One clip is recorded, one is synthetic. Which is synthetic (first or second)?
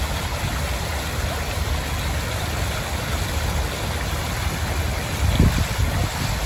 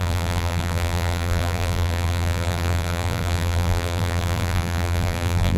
second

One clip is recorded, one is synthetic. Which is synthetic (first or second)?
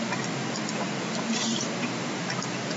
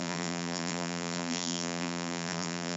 second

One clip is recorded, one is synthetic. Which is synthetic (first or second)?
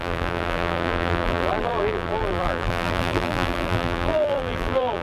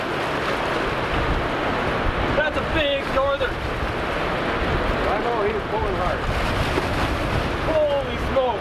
first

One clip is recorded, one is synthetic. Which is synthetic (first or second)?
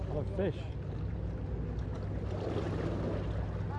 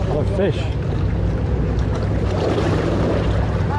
second